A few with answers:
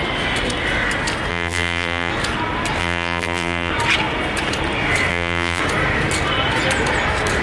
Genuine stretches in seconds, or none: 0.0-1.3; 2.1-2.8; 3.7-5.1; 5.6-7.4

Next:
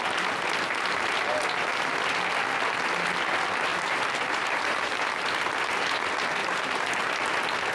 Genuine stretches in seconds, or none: 0.0-3.7; 5.3-6.4; 6.9-7.7

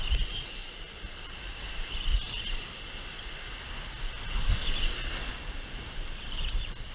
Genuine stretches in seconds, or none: 0.0-0.6; 1.6-4.5; 5.3-6.9

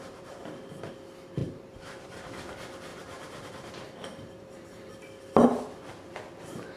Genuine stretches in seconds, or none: 0.6-1.4; 2.3-2.9; 4.9-6.8

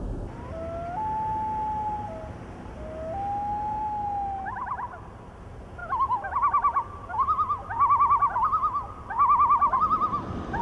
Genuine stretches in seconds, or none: 0.0-10.6

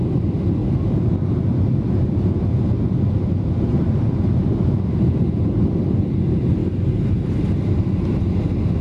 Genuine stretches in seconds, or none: 0.0-8.8

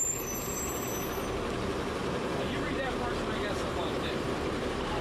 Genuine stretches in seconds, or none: 0.0-3.7; 4.3-5.0

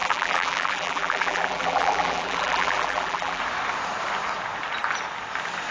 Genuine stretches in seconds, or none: 3.4-5.7